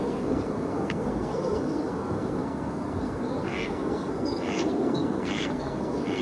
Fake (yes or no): yes